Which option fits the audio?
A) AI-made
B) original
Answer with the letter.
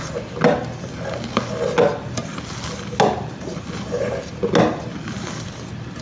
B